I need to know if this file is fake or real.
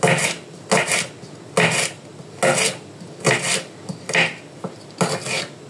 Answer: real